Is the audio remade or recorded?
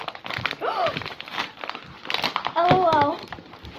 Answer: recorded